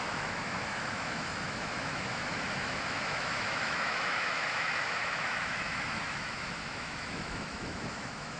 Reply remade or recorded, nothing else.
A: remade